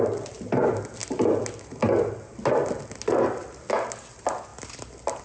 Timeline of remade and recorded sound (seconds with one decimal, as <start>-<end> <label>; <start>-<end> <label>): 0.0-5.2 recorded